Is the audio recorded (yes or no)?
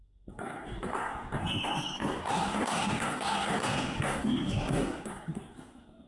no